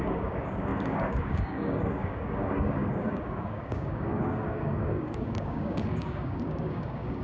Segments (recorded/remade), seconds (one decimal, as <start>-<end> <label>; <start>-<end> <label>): 0.0-7.2 remade